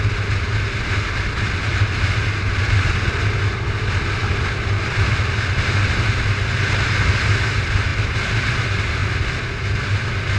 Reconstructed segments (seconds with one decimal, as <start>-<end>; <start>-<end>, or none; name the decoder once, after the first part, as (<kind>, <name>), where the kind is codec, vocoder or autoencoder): none